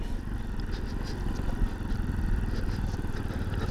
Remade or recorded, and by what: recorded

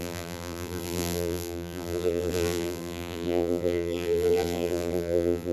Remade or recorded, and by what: remade, vocoder, BigVGAN v2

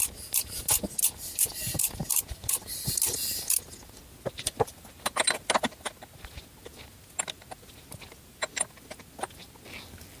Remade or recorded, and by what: recorded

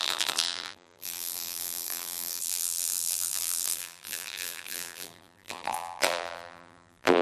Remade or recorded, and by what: remade, vocoder, BigVGAN v2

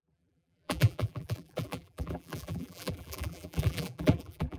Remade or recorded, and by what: remade, vocoder, BigVGAN v2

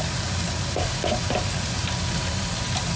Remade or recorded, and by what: remade, vocoder, BigVGAN v2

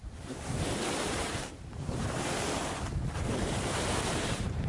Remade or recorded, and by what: remade, vocoder, BigVGAN v2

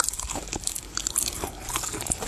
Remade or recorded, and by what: recorded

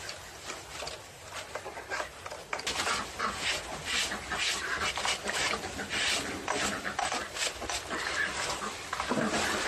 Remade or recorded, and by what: recorded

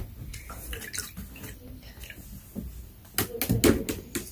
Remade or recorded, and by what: recorded